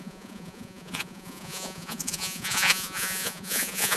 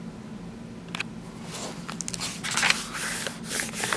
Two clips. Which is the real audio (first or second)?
second